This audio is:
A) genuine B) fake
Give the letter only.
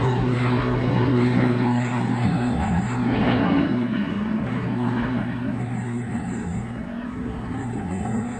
B